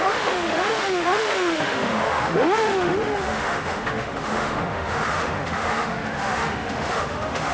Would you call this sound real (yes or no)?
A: no